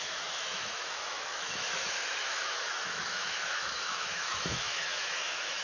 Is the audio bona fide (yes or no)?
no